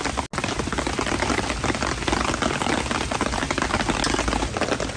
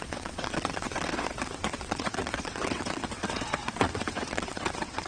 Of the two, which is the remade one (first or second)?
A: second